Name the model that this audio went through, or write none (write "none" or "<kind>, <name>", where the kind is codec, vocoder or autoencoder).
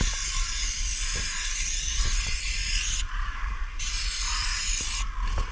none